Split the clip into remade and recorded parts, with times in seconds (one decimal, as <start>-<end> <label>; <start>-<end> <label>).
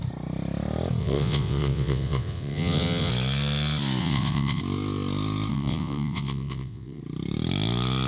0.0-1.0 recorded; 1.0-3.1 remade; 3.1-4.0 recorded; 4.0-4.6 remade; 4.6-5.5 recorded; 5.5-7.0 remade; 7.0-8.1 recorded